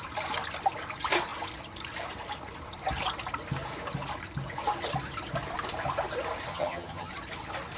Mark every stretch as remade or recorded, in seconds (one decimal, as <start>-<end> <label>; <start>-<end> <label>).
0.0-6.5 recorded; 6.5-7.1 remade; 7.1-7.8 recorded